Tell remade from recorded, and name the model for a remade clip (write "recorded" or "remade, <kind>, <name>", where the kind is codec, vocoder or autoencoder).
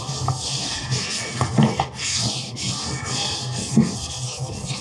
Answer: remade, codec, SNAC